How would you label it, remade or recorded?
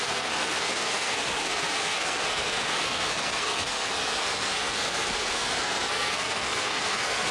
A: remade